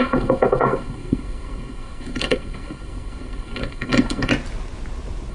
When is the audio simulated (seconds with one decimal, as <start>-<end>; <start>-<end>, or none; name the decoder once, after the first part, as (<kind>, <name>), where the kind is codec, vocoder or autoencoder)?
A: 0.0-4.3 (codec, SNAC)